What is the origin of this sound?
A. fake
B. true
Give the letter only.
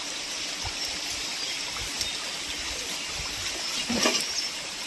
B